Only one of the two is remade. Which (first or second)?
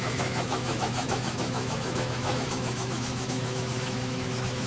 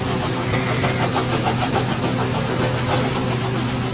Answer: first